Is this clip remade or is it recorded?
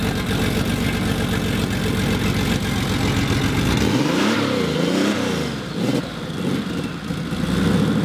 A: recorded